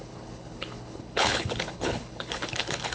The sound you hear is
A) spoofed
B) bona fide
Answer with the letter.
A